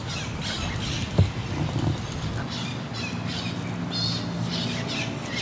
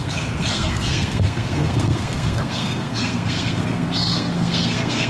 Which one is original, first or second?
first